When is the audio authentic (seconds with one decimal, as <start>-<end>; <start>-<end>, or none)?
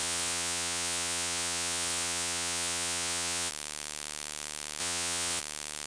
3.5-4.8; 5.4-5.9